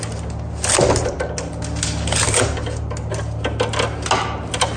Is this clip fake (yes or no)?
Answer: no